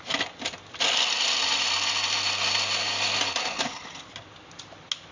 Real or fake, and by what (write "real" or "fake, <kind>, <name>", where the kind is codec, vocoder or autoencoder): real